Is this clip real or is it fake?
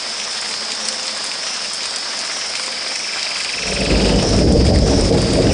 real